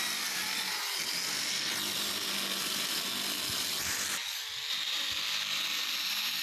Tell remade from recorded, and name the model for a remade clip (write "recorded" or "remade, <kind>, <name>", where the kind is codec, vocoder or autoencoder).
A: recorded